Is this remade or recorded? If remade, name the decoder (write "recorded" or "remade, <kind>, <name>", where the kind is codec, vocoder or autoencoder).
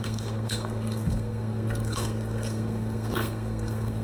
remade, codec, SNAC